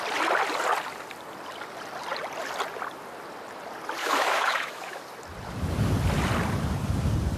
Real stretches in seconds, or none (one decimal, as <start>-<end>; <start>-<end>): 0.0-4.0; 5.0-7.4